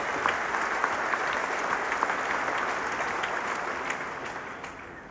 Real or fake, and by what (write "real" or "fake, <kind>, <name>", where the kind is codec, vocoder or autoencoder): real